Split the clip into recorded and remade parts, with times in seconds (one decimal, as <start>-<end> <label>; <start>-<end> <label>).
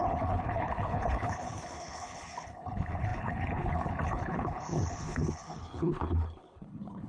0.0-7.1 remade